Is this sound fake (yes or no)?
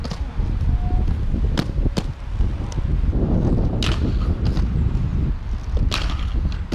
no